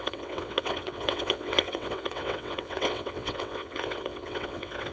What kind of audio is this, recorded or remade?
remade